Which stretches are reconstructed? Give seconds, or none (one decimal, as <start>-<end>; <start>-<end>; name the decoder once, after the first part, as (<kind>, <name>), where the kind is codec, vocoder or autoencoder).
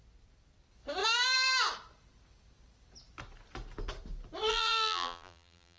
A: 4.5-5.8 (vocoder, BigVGAN v2)